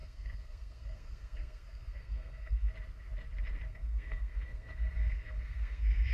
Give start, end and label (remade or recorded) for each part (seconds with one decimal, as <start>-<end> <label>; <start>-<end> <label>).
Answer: 0.0-2.7 remade; 2.7-3.7 recorded; 3.7-6.1 remade